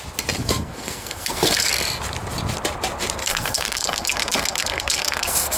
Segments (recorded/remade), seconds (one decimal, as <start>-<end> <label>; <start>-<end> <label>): 0.0-0.4 recorded; 0.4-1.7 remade; 1.7-3.2 recorded; 3.2-5.6 remade